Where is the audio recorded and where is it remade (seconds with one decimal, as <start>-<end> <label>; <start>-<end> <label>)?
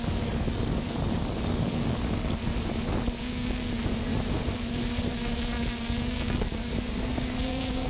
0.0-2.4 remade; 2.4-3.2 recorded; 3.2-4.1 remade; 4.1-5.1 recorded; 5.1-7.9 remade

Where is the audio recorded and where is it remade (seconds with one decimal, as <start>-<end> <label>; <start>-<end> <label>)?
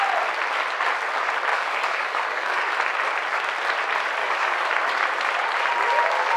0.0-1.5 recorded; 1.5-2.7 remade; 2.7-4.2 recorded; 4.2-4.7 remade; 4.7-6.4 recorded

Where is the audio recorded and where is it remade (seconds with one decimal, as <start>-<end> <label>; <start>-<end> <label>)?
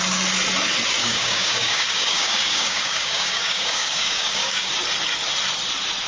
0.0-1.0 recorded; 1.0-4.7 remade; 4.7-6.1 recorded